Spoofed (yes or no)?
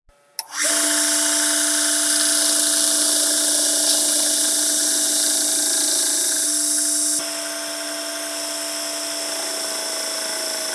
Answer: no